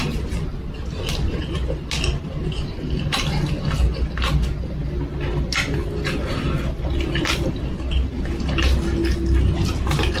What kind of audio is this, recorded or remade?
recorded